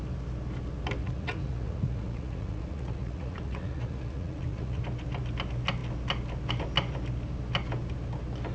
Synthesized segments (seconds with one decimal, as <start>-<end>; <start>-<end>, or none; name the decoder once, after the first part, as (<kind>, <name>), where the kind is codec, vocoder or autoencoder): 1.0-4.8 (vocoder, Vocos)